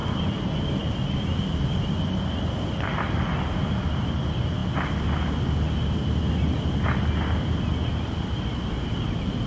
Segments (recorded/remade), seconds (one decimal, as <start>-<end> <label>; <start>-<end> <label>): 0.0-0.8 recorded; 0.8-4.6 remade; 4.6-8.4 recorded; 8.4-9.5 remade